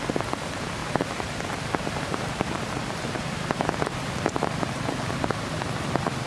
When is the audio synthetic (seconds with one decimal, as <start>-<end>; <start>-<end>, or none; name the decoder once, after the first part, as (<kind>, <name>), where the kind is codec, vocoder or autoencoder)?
0.8-4.2 (vocoder, BigVGAN v2)